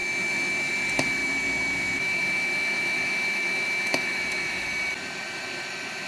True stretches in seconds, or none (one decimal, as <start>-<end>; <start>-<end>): 0.7-1.2; 4.7-6.1